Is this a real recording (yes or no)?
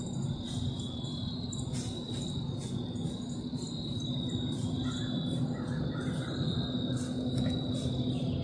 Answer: yes